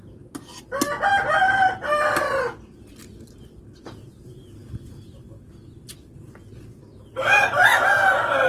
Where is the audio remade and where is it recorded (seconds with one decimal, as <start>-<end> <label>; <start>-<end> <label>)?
0.0-8.5 recorded

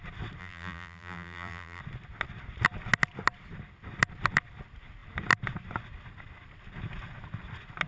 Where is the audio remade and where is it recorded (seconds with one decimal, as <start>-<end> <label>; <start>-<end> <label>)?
0.0-0.4 recorded; 0.4-1.8 remade; 1.8-7.9 recorded

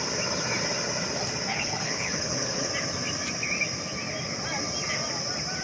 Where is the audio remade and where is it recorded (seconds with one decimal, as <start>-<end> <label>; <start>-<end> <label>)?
0.0-1.5 recorded; 1.5-2.7 remade; 2.7-5.6 recorded